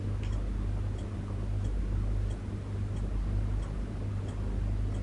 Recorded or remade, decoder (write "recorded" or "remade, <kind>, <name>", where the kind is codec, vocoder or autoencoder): recorded